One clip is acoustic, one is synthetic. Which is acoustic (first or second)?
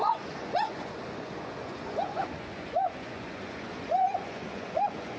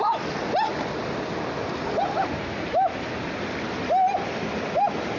second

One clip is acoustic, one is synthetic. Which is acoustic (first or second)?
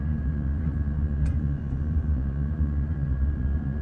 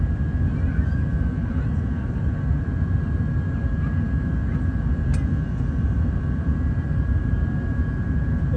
second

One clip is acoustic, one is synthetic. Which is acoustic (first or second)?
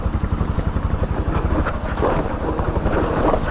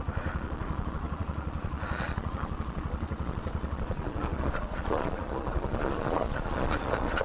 first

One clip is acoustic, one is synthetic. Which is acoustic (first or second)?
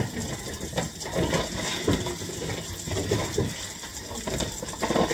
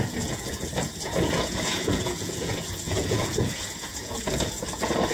first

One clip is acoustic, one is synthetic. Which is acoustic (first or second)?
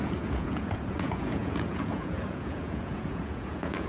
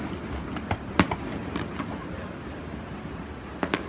second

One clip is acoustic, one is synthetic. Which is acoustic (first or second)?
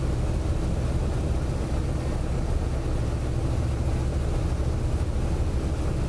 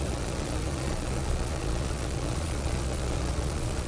first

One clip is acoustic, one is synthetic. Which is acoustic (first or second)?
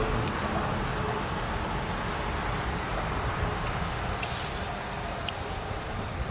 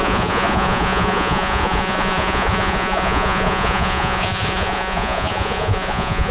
first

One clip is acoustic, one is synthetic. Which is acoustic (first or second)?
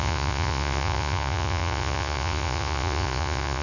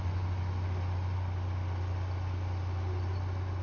second